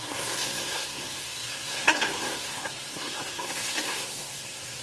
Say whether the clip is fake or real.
fake